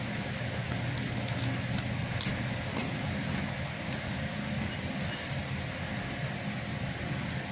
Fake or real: real